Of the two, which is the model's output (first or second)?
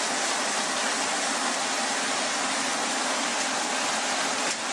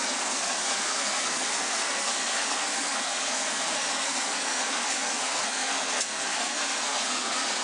second